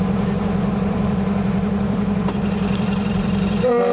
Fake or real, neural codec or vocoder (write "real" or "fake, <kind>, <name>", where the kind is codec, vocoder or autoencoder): fake, vocoder, BigVGAN v2